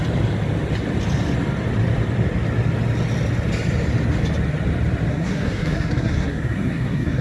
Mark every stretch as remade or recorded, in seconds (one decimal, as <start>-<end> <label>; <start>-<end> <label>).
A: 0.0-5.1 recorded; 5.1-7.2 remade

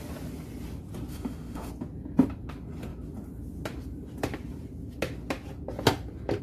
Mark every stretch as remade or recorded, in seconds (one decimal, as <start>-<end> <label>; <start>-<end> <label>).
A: 0.0-1.1 recorded; 1.1-1.7 remade; 1.7-6.4 recorded

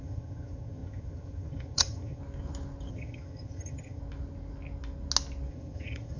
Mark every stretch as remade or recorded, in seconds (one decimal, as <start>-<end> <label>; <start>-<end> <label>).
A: 0.0-2.2 remade; 2.2-2.9 recorded; 2.9-4.0 remade; 4.0-5.5 recorded; 5.5-6.2 remade